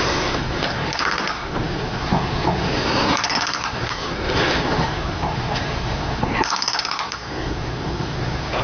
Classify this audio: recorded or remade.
remade